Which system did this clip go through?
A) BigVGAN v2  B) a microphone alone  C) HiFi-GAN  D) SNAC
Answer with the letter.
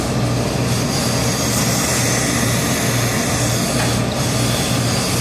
B